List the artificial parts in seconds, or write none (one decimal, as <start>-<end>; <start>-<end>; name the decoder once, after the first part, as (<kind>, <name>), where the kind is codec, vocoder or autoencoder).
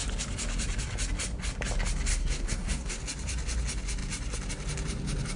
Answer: 2.1-3.0 (codec, SNAC)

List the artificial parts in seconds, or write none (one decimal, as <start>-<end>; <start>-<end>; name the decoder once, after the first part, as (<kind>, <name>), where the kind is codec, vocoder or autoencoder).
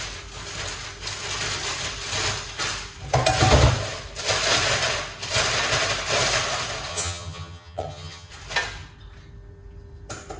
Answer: 6.9-8.3 (vocoder, HiFi-GAN)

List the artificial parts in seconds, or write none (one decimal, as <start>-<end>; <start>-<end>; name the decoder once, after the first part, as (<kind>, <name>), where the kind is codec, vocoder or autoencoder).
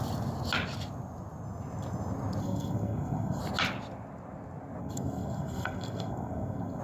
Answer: 2.4-3.4 (codec, SNAC); 4.8-6.8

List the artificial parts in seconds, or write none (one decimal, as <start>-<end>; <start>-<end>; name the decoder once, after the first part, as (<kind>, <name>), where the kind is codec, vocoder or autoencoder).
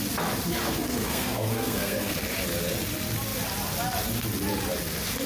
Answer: 0.6-2.2 (codec, SNAC)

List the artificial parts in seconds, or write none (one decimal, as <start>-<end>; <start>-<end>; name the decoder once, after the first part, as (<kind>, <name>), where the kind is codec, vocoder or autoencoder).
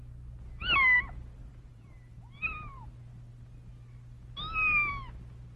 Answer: 1.5-2.8 (vocoder, BigVGAN v2)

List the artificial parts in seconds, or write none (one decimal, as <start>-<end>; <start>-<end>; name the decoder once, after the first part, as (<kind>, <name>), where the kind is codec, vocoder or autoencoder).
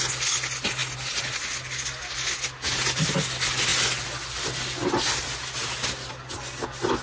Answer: none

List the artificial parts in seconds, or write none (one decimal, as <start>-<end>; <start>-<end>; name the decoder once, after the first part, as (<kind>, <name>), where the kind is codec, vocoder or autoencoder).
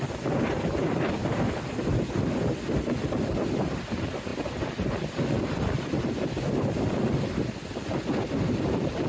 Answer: none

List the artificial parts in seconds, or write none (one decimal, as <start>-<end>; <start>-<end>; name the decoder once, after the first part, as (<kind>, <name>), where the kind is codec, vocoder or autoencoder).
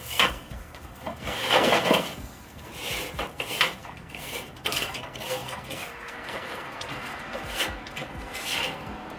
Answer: 0.0-2.7 (codec, SNAC); 3.3-9.2